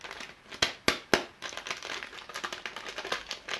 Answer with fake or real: real